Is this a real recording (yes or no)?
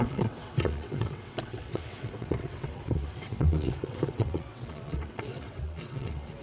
no